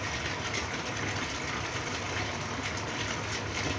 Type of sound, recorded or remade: recorded